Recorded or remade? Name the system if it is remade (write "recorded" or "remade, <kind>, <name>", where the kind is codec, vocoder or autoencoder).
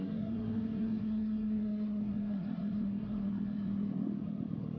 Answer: remade, codec, SNAC